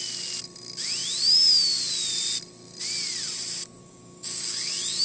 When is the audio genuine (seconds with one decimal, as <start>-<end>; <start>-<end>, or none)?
0.0-3.8